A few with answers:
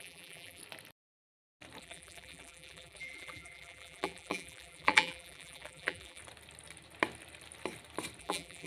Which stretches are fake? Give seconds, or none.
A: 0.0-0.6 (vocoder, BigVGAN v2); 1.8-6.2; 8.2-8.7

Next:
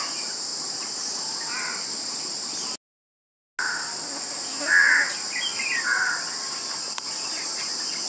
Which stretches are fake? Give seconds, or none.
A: 0.5-2.2 (vocoder, BigVGAN v2)

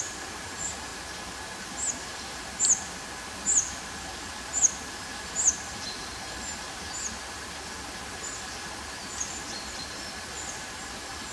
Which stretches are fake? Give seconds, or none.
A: none

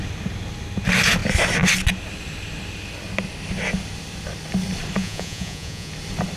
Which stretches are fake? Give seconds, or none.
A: 5.0-5.9 (vocoder, Vocos)

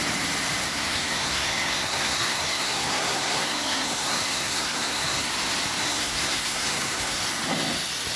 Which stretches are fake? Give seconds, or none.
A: 0.6-5.3 (codec, SNAC); 5.8-7.2

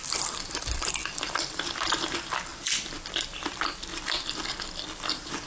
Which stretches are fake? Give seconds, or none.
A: 1.0-1.6 (vocoder, BigVGAN v2); 3.9-5.5

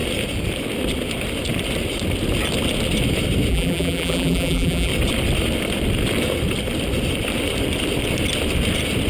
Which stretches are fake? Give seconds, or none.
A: 3.5-4.9 (vocoder, BigVGAN v2)

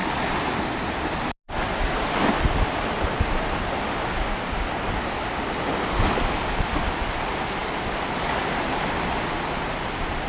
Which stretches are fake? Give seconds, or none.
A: none